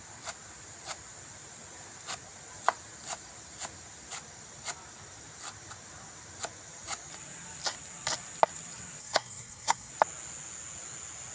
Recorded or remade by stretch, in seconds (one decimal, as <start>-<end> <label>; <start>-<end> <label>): 0.0-9.0 recorded; 9.0-9.9 remade; 9.9-11.3 recorded